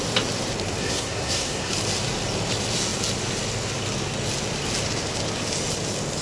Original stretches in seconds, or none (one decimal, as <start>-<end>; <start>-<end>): 0.0-0.8; 1.7-6.2